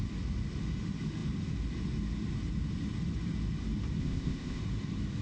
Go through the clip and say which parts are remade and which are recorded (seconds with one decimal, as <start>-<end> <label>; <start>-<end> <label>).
0.0-4.0 recorded; 4.0-4.6 remade; 4.6-5.2 recorded